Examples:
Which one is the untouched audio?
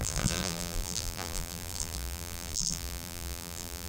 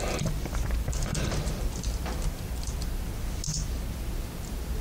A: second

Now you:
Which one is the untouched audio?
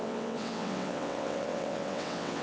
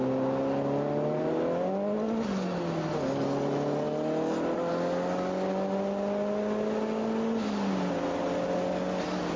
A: second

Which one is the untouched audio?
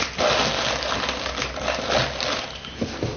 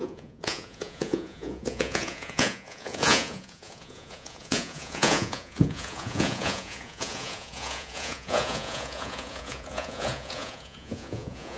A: first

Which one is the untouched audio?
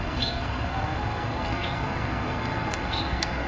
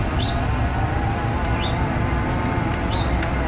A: second